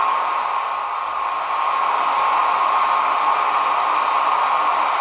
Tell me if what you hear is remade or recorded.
recorded